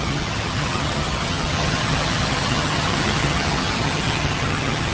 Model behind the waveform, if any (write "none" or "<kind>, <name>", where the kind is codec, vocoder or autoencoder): vocoder, HiFi-GAN